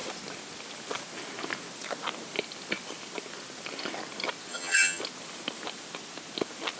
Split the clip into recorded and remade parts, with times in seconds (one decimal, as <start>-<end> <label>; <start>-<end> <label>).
0.0-4.5 recorded; 4.5-5.0 remade; 5.0-6.8 recorded